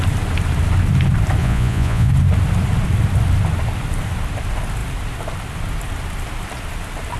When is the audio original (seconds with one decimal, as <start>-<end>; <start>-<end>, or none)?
0.0-1.4; 2.1-7.2